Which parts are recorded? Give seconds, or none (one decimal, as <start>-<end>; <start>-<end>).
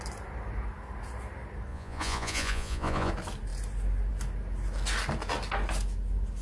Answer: 0.0-1.7; 3.1-6.4